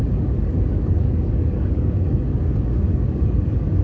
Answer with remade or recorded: remade